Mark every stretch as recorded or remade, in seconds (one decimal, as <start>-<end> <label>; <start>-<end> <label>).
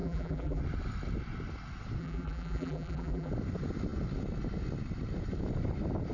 0.0-0.6 remade; 0.6-2.0 recorded; 2.0-3.3 remade; 3.3-6.1 recorded